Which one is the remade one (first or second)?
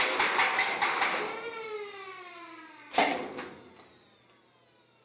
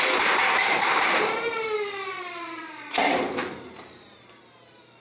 second